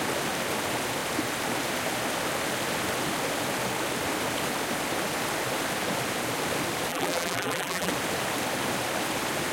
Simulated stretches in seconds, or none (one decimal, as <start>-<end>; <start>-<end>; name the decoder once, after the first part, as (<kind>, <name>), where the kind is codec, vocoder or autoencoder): 6.9-7.9 (vocoder, BigVGAN v2)